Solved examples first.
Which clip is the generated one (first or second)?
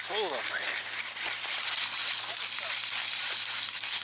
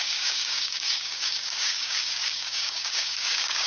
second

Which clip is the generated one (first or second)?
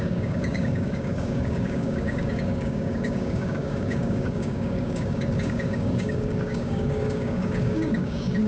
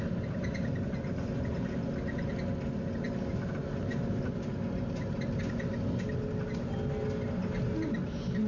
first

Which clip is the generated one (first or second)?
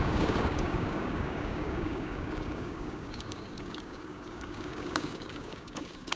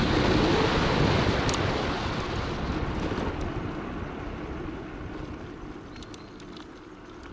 first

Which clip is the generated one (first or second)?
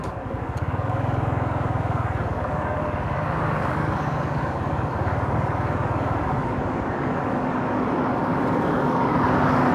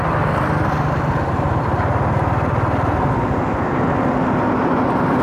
first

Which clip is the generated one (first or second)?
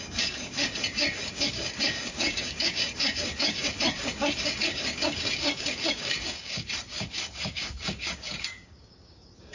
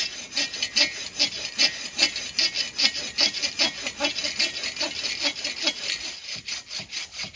first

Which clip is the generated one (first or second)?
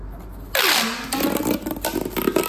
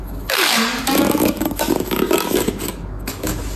second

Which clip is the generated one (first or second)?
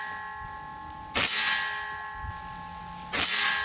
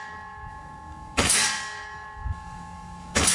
second